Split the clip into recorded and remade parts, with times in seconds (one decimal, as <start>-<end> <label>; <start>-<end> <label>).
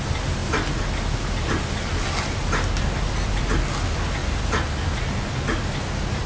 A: 0.0-6.3 recorded